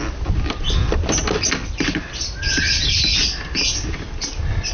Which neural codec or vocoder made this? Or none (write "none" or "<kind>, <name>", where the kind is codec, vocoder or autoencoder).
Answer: none